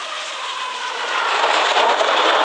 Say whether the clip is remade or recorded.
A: recorded